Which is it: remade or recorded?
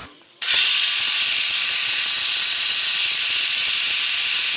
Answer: remade